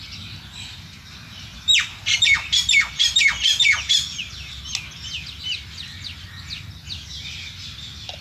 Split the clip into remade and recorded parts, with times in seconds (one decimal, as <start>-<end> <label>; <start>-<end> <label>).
0.0-1.5 recorded; 1.5-4.5 remade; 4.5-8.2 recorded